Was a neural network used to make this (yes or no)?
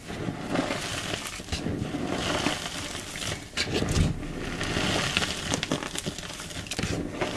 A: no